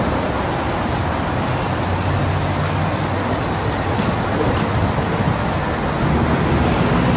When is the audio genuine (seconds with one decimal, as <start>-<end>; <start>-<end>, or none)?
0.0-7.2